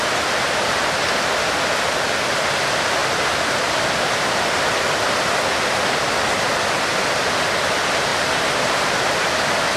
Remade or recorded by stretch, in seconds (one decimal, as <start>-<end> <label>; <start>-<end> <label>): 0.0-8.1 recorded; 8.1-9.3 remade; 9.3-9.8 recorded